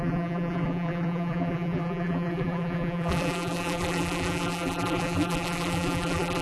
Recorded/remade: remade